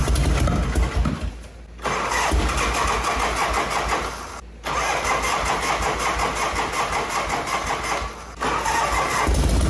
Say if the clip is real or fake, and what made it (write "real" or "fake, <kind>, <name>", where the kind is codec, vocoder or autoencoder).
real